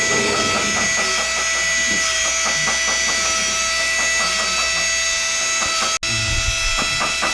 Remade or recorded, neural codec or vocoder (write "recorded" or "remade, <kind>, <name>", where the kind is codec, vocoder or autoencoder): recorded